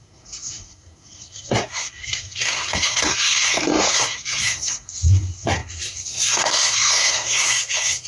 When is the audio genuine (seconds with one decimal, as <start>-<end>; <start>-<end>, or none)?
none